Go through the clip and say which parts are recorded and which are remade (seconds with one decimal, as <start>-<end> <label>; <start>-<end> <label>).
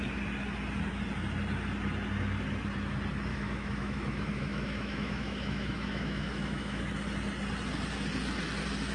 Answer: 0.0-3.3 recorded; 3.3-6.8 remade; 6.8-8.9 recorded